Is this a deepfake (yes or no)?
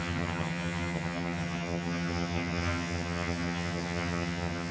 yes